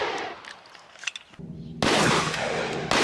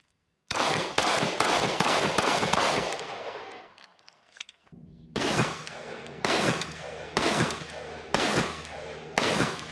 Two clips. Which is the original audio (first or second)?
first